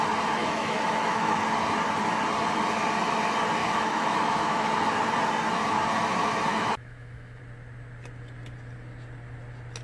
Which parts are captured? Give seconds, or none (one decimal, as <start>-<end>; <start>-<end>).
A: 0.0-0.4; 1.4-3.6; 4.7-6.5; 7.4-9.8